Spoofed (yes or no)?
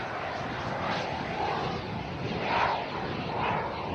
no